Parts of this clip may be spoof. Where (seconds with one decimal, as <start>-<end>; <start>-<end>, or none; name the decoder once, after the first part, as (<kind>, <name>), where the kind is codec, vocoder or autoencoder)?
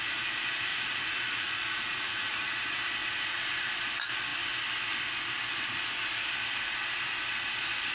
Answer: 0.7-2.6 (vocoder, Vocos); 3.0-3.7